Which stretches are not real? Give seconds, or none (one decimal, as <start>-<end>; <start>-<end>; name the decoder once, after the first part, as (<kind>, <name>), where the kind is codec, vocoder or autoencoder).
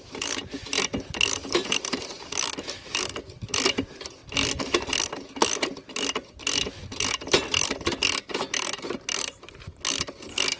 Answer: none